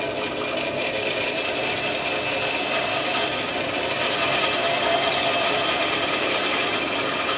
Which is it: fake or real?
real